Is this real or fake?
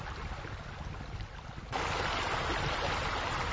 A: real